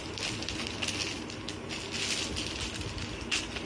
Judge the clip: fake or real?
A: real